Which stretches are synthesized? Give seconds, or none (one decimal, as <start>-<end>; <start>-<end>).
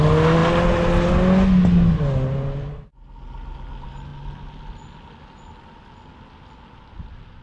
none